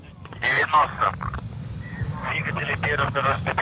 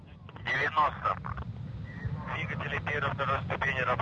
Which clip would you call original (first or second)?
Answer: second